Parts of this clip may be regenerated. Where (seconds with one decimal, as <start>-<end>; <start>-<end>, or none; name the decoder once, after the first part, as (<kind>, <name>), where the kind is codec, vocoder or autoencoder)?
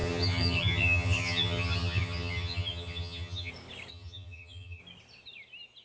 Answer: 0.0-3.5 (vocoder, HiFi-GAN); 3.9-4.8